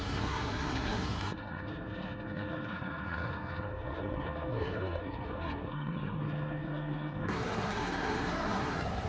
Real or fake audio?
fake